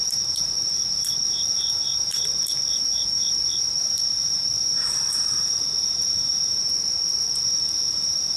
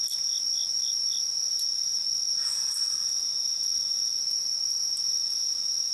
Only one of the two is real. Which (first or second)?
second